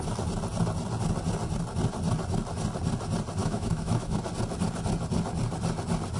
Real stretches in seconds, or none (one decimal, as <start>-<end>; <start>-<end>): 0.0-3.4; 4.2-6.2